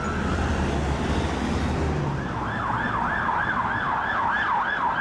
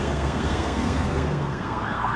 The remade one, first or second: second